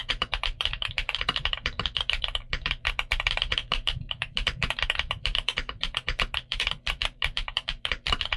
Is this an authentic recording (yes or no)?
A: no